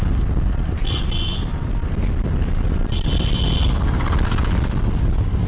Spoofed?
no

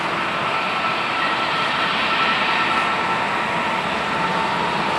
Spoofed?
no